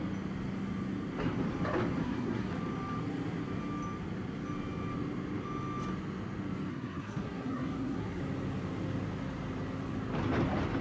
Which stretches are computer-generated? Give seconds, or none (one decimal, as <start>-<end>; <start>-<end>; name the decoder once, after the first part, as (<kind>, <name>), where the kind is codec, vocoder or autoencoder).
2.0-2.5 (codec, SNAC); 6.7-8.2